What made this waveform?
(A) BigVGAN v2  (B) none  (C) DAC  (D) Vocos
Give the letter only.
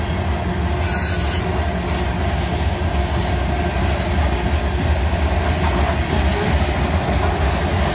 B